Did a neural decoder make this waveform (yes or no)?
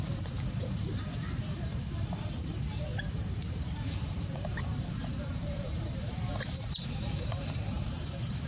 yes